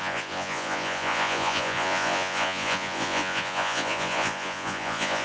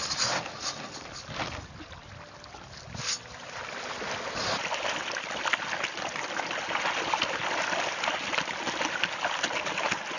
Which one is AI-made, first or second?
first